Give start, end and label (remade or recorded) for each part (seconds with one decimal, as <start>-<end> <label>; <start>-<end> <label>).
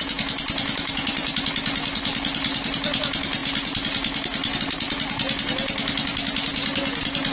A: 0.0-7.3 recorded